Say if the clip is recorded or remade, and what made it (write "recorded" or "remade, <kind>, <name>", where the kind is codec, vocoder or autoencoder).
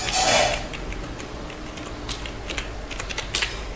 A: recorded